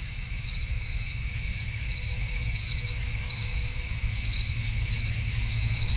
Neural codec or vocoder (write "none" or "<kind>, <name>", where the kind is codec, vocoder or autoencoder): autoencoder, DAC-VAE